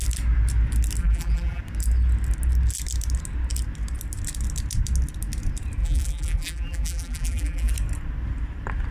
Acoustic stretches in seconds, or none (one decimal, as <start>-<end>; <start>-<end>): 0.0-1.0; 1.6-5.8; 7.7-8.9